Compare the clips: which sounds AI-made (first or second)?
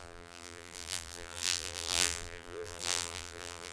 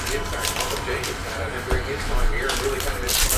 first